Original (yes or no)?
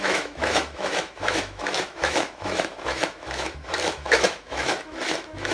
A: no